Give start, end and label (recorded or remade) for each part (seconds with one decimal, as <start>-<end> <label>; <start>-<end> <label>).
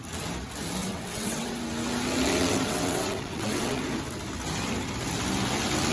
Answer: 0.0-0.8 recorded; 0.8-1.6 remade; 1.6-2.4 recorded; 2.4-3.8 remade; 3.8-5.9 recorded